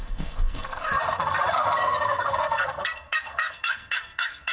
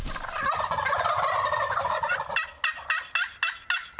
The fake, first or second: first